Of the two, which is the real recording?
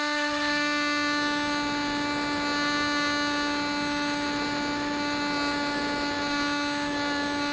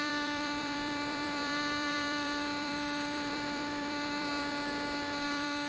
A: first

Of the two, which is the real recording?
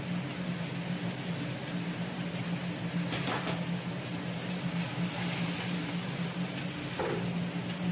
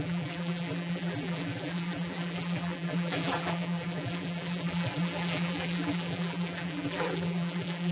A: first